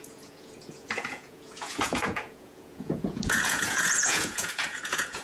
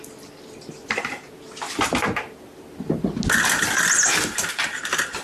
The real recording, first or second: second